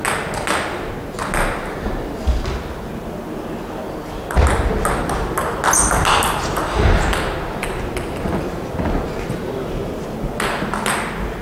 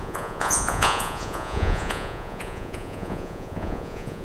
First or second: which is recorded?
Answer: first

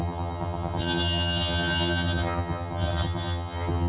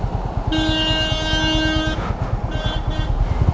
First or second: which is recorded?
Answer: second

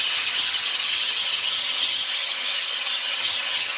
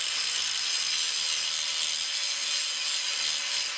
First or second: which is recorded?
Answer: second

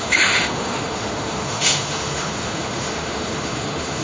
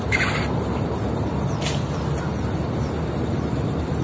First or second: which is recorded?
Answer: second